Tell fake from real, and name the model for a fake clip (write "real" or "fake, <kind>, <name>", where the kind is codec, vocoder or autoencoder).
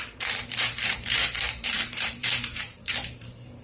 fake, vocoder, BigVGAN v2